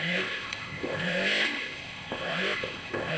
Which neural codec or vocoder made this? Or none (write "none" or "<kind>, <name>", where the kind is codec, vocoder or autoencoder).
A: codec, ZipCodec